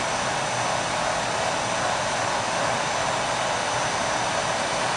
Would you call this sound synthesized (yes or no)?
no